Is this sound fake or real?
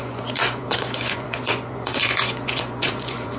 fake